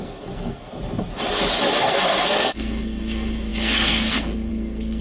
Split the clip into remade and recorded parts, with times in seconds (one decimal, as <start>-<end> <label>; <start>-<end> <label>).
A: 0.0-0.7 remade; 0.7-1.8 recorded; 1.8-5.0 remade